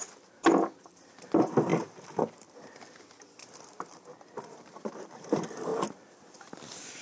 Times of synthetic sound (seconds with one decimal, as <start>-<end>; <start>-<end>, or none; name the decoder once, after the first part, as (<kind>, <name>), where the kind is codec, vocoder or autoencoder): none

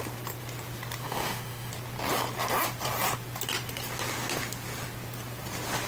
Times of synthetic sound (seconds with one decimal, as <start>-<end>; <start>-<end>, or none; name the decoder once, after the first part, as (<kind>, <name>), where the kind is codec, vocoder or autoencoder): 1.0-1.7 (autoencoder, DAC-VAE)

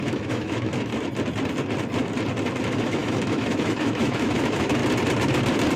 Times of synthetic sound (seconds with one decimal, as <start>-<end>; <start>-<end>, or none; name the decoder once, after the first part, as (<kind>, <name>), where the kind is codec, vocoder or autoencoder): 0.0-0.9 (autoencoder, DAC-VAE); 2.6-4.8

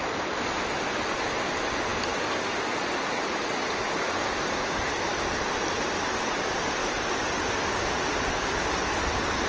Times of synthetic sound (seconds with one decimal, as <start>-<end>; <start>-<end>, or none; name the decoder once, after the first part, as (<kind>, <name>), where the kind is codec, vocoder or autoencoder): none

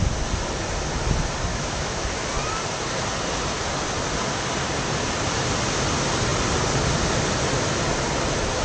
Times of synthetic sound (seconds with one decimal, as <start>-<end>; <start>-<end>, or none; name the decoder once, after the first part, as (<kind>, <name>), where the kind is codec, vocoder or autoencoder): 1.5-2.1 (autoencoder, DAC-VAE)

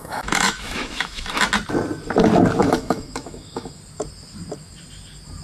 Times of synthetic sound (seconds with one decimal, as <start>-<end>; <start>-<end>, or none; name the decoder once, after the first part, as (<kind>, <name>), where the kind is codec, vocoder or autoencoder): 0.0-1.4 (autoencoder, DAC-VAE); 2.6-3.8

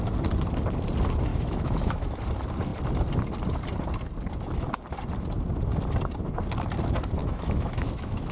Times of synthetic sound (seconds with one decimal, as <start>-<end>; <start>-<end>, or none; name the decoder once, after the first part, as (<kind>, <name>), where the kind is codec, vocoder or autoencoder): 1.3-2.2 (autoencoder, DAC-VAE); 7.2-8.3

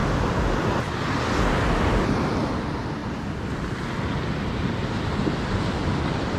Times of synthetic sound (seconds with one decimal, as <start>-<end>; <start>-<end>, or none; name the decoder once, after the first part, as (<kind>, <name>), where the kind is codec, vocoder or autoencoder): none